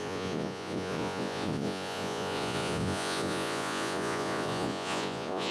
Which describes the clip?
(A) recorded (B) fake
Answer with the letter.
B